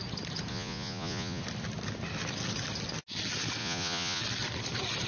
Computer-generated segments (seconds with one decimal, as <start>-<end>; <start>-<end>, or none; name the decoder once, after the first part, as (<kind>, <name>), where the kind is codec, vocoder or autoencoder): 0.5-1.4 (vocoder, Vocos); 3.6-4.2